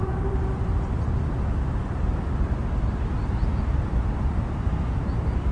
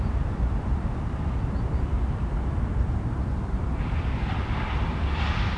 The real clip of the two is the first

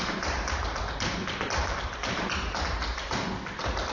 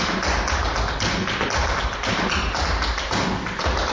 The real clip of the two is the second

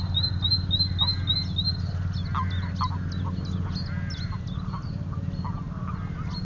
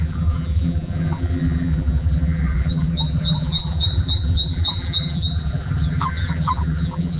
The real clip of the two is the first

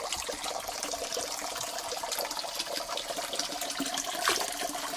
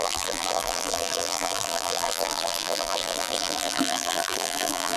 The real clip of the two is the first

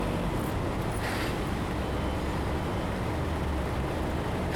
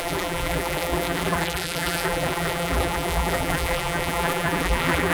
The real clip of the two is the first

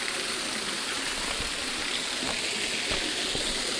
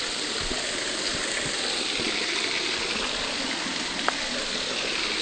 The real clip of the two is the first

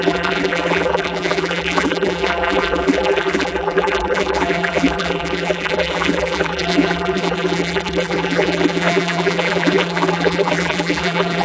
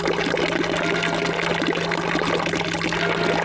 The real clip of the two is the second